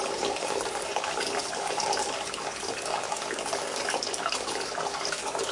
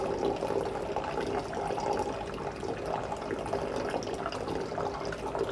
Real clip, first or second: second